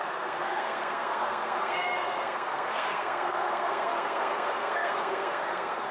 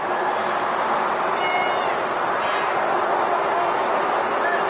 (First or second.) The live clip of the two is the second